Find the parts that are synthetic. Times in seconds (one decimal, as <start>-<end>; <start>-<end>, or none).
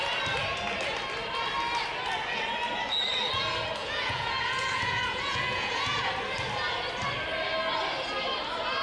3.8-6.1